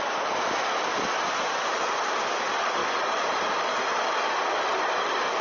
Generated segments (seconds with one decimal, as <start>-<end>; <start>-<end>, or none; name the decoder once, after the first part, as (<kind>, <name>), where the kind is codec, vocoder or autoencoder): none